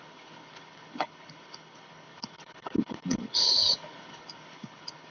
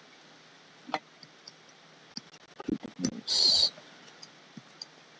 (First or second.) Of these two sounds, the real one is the second